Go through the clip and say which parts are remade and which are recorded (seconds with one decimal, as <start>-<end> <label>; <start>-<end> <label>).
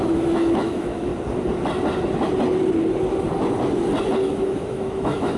0.0-1.1 remade; 1.1-4.3 recorded; 4.3-5.4 remade